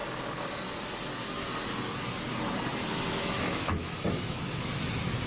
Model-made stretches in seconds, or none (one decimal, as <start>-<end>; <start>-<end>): 2.7-4.8